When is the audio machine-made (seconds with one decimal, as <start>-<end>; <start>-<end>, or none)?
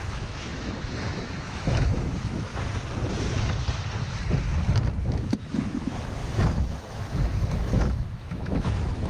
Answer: 0.0-2.5; 5.0-9.1